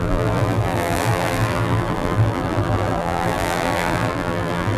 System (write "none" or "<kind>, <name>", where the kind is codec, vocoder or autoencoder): vocoder, BigVGAN v2